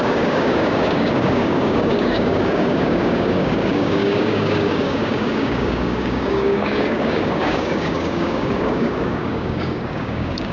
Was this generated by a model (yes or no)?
yes